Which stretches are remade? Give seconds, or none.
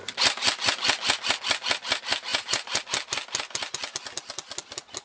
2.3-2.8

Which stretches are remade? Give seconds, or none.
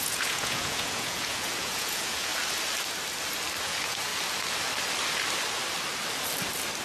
0.0-2.3; 3.6-4.1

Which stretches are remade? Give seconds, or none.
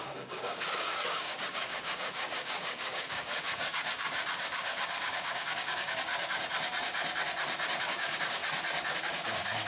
0.0-6.1; 7.8-8.4; 9.0-9.7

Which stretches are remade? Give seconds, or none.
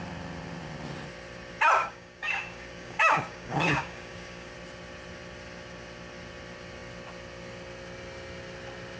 1.8-4.5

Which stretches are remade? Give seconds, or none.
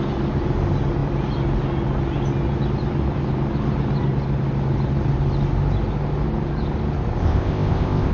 7.2-8.1